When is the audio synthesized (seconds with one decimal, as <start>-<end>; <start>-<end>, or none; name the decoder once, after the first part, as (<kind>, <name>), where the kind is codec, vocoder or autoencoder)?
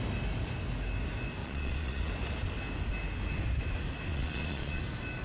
1.4-2.1 (vocoder, Vocos); 4.1-4.8